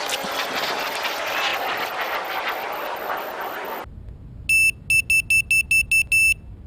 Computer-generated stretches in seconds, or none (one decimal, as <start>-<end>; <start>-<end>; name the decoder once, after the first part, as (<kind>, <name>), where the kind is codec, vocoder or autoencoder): none